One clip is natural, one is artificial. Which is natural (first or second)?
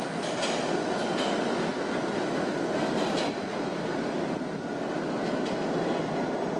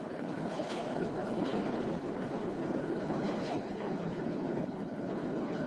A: first